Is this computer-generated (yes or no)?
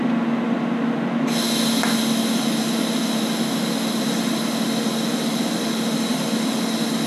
no